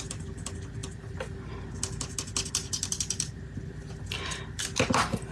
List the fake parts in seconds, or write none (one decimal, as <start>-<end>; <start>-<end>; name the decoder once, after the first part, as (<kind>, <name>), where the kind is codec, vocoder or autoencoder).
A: none